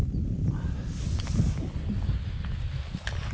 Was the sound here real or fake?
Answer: real